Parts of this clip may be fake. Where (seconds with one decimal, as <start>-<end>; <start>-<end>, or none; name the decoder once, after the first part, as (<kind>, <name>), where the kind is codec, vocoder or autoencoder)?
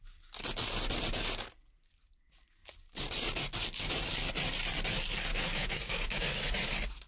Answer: 5.3-6.4 (autoencoder, DAC-VAE)